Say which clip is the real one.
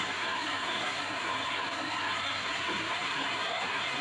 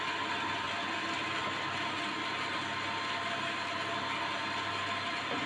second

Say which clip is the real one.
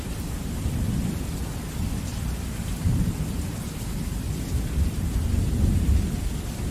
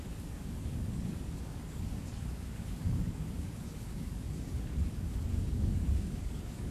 first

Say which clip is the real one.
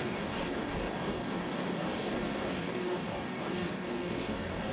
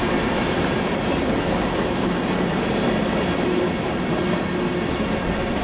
second